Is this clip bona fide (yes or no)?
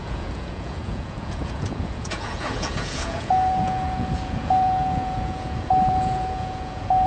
no